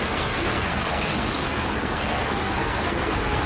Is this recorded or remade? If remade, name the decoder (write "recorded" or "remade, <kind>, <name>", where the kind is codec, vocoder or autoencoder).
remade, codec, SNAC